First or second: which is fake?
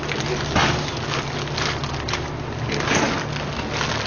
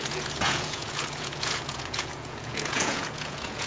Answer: second